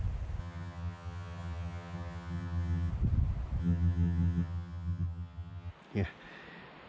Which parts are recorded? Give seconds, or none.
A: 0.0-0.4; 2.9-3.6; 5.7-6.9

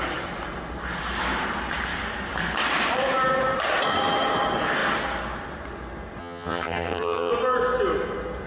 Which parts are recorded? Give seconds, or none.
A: 0.0-6.2; 7.3-8.5

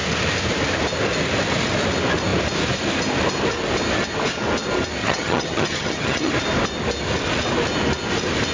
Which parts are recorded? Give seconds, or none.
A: 0.0-5.0; 6.3-8.5

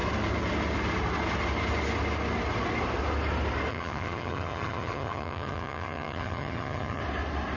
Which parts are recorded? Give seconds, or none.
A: 0.0-3.7; 7.0-7.6

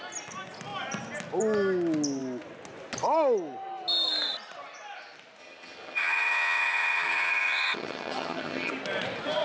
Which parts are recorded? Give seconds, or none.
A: 0.0-5.4; 8.7-9.4

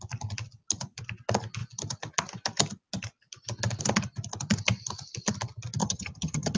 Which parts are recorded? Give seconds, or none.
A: 0.0-5.8